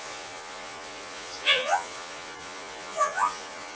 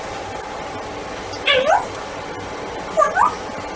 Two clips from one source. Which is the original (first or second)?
second